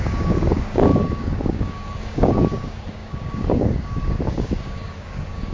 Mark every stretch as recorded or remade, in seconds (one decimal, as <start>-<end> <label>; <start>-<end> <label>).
0.0-5.5 remade